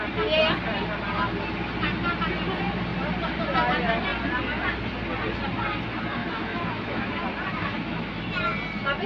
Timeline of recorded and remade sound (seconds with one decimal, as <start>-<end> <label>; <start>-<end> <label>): 0.0-6.2 recorded; 6.2-7.1 remade; 7.1-7.6 recorded; 7.6-8.2 remade; 8.2-9.1 recorded